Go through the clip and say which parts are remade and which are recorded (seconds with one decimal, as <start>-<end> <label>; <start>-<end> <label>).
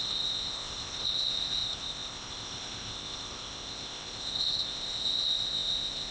0.0-6.1 remade